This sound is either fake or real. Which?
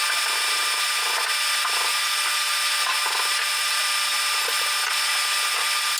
real